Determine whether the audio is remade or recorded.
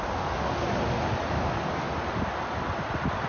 recorded